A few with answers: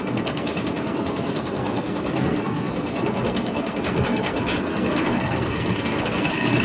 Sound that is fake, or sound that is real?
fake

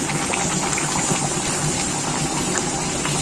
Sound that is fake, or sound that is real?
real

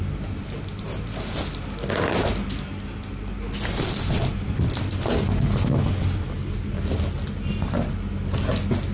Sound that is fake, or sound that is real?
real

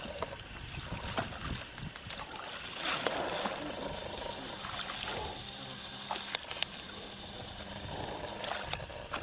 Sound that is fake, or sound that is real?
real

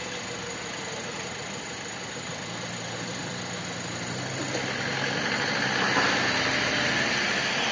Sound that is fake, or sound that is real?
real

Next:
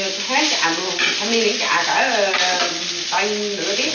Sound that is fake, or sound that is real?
real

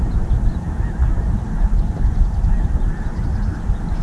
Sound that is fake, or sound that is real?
real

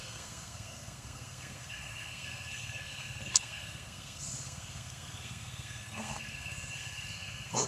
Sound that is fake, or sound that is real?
fake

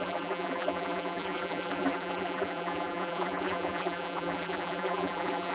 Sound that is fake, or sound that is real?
fake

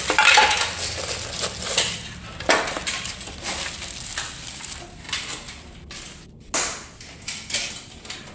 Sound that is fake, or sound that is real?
real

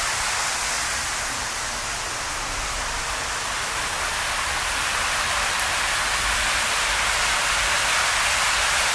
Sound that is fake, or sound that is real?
real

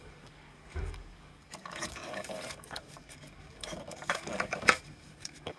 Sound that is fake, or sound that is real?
fake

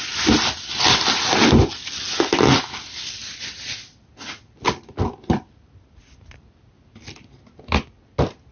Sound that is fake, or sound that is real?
real